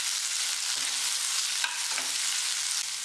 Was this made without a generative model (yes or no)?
yes